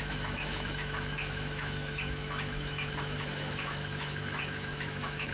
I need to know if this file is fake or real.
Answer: fake